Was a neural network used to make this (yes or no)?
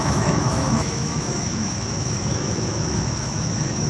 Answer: yes